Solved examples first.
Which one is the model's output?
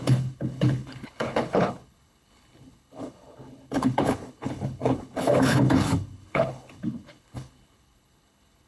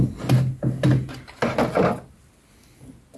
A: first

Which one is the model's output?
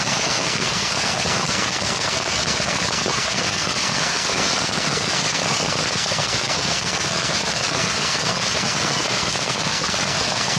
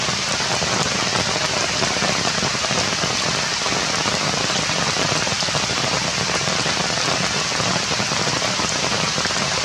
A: first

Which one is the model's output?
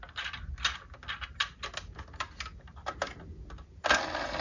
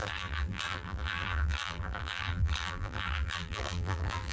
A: second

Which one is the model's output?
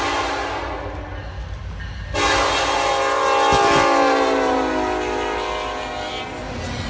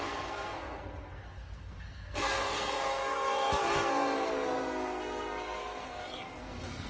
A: second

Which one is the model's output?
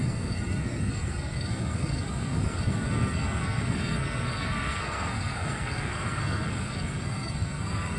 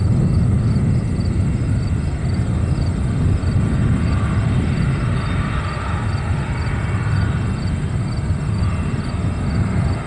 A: first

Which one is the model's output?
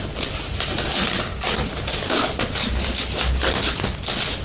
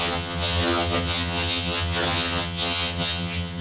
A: second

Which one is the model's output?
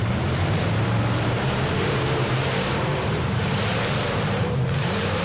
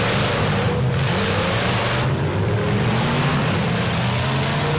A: first